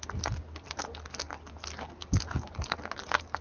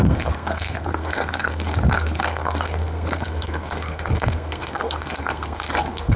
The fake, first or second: second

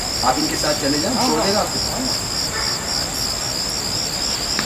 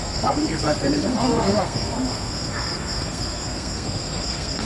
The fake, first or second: second